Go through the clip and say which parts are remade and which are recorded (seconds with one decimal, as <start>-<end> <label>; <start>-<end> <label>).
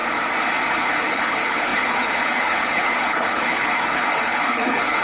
0.0-0.7 recorded; 0.7-5.0 remade